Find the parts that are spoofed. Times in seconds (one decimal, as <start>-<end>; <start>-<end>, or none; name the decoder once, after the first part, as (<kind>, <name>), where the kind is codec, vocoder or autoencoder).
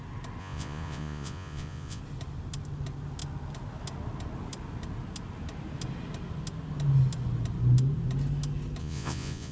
0.4-2.0 (vocoder, Vocos); 8.8-9.5